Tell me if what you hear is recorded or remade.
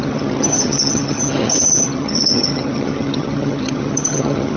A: remade